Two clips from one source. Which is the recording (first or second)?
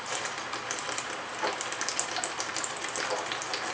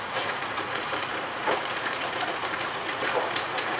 first